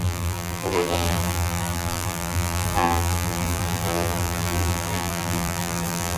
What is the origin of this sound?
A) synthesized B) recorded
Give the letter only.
A